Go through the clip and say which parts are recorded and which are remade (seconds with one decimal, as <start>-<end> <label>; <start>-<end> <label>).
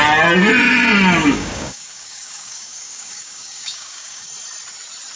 0.0-1.2 recorded; 1.2-4.3 remade; 4.3-5.2 recorded